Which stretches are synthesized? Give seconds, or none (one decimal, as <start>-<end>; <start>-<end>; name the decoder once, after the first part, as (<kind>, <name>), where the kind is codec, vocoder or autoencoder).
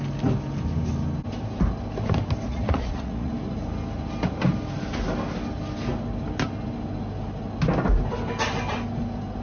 2.5-3.3 (vocoder, Vocos)